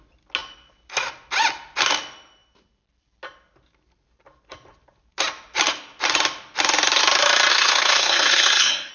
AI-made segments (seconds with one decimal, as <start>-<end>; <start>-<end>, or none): 7.5-8.9